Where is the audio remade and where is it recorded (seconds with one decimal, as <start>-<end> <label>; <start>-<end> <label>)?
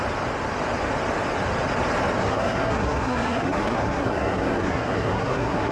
0.0-2.2 recorded; 2.2-5.7 remade